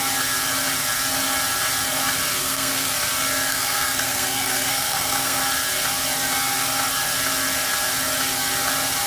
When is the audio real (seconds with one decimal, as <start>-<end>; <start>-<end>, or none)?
0.0-2.4; 2.9-3.5; 5.4-9.1